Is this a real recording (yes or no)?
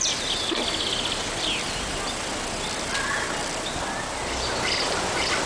yes